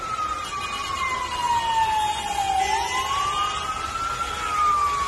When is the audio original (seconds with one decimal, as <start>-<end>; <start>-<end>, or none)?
0.0-5.1

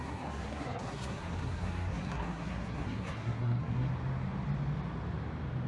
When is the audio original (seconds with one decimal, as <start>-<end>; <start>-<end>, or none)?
3.9-5.7

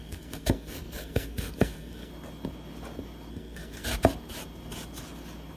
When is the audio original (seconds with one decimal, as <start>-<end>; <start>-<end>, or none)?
2.1-3.3; 3.9-5.6

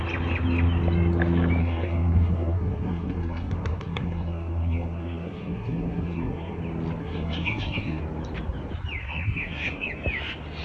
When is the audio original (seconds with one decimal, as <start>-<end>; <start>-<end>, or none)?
0.0-1.6; 6.6-7.0; 8.0-9.0; 9.9-10.6

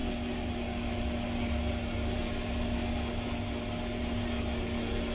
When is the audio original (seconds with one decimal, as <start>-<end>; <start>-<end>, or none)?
0.0-5.1

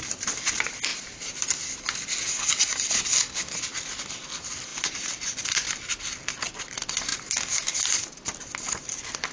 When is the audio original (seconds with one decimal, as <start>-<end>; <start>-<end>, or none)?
0.0-9.3

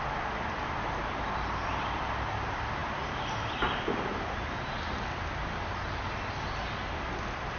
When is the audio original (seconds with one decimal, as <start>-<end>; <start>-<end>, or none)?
0.0-7.6